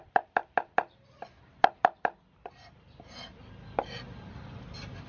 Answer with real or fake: real